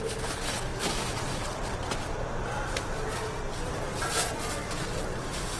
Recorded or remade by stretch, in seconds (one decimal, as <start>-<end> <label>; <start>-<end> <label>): 0.0-5.6 recorded